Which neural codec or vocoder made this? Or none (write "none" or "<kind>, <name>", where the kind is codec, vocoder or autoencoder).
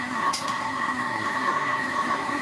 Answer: codec, SNAC